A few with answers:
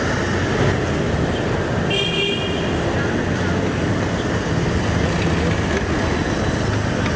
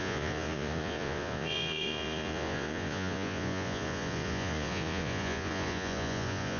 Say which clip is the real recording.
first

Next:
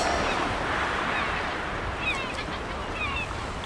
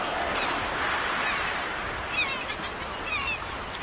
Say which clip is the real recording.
second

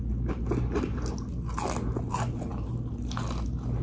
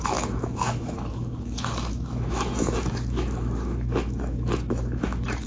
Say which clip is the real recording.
first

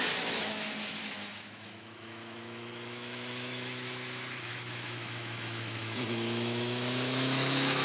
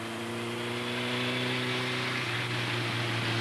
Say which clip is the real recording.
second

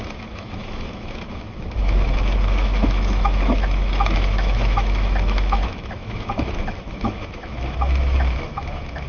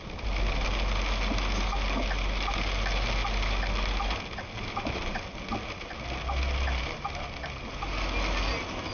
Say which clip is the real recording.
second